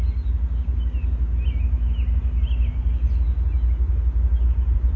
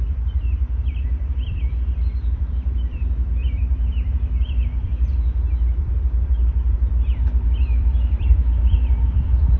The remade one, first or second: second